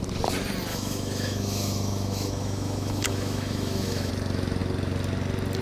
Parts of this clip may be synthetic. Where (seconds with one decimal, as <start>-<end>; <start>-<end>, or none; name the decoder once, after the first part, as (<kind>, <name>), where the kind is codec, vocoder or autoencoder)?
0.7-4.1 (autoencoder, DAC-VAE)